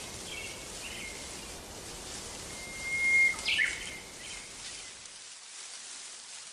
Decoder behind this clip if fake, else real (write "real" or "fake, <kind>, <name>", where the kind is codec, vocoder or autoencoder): real